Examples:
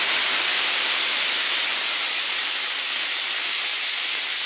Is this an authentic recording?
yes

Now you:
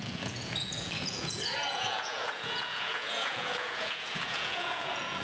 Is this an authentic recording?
no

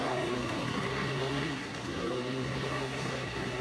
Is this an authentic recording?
no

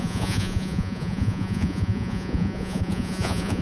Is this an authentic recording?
no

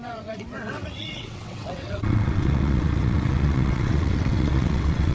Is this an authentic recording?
no